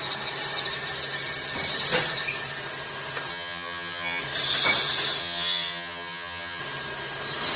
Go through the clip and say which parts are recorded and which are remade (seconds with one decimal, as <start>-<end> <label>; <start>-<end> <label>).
0.0-3.3 recorded; 3.3-4.2 remade; 4.2-5.2 recorded; 5.2-6.6 remade; 6.6-7.6 recorded